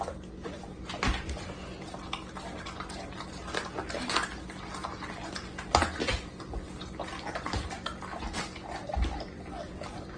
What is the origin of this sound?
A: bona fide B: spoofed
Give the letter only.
A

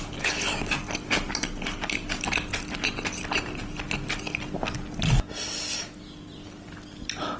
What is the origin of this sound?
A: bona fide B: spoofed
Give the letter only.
A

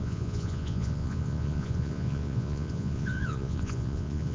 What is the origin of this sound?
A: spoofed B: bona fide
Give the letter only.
A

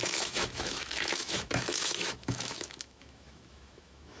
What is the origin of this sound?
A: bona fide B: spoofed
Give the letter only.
B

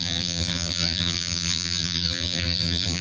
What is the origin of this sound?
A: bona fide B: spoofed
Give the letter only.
B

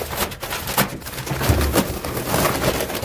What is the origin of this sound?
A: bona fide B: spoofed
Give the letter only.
A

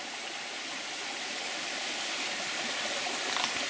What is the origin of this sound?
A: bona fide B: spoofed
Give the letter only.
A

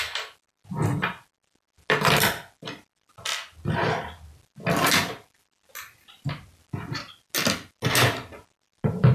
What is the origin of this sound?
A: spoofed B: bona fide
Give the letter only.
B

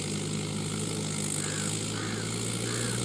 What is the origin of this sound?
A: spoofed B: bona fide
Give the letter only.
B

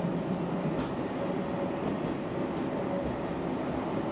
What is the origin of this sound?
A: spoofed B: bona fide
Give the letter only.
B